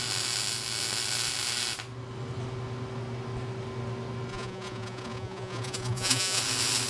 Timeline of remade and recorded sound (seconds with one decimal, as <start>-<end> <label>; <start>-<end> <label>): 0.0-4.3 recorded; 4.3-6.4 remade; 6.4-6.9 recorded